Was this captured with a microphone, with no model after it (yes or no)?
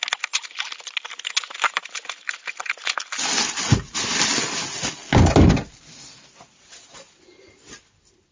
yes